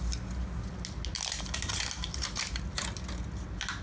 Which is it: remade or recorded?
recorded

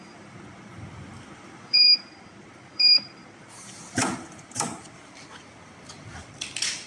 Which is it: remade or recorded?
remade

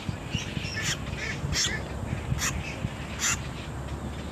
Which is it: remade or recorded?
recorded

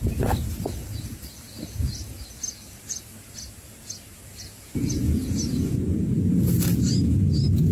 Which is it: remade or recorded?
recorded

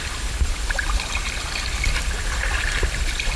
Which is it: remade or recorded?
remade